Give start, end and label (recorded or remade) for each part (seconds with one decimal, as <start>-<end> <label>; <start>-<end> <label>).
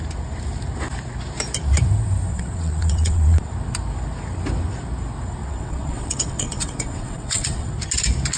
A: 0.0-2.3 recorded; 2.3-3.5 remade; 3.5-5.4 recorded; 5.4-7.7 remade; 7.7-8.4 recorded